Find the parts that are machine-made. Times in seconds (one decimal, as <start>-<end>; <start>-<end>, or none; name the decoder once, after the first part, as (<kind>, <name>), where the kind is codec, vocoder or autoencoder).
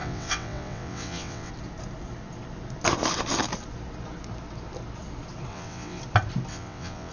0.0-1.5 (vocoder, WaveNeXt); 5.5-6.0; 6.5-7.1